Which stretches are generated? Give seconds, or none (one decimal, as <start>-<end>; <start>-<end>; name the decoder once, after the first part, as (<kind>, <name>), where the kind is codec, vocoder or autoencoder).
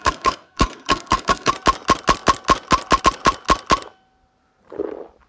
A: 0.0-1.5 (codec, SNAC)